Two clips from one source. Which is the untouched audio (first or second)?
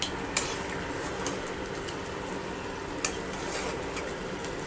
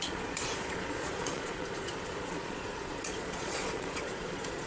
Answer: first